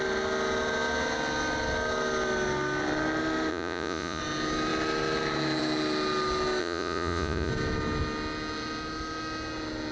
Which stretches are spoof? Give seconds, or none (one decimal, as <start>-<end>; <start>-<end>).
3.5-4.2; 6.6-7.5